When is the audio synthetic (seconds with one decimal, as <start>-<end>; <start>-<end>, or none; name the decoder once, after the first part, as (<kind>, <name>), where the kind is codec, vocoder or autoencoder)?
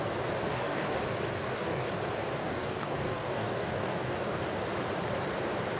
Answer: 0.5-1.0 (codec, DAC); 1.4-1.9; 2.4-4.4